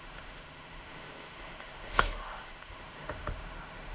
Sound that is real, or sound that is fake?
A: fake